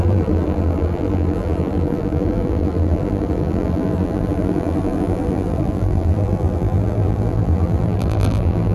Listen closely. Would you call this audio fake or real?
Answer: fake